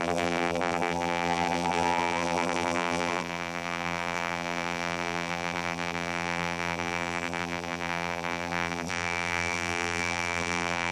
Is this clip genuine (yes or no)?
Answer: no